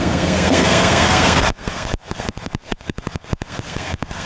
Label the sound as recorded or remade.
remade